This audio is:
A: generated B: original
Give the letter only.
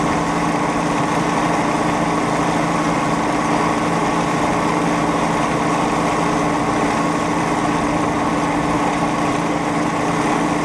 B